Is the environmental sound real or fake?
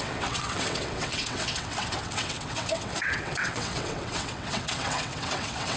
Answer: fake